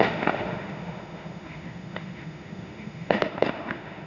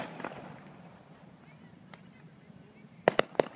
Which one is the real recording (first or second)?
second